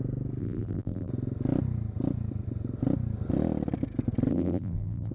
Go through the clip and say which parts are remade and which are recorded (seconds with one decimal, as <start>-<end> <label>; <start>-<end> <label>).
0.0-0.4 recorded; 0.4-1.1 remade; 1.1-4.3 recorded; 4.3-5.1 remade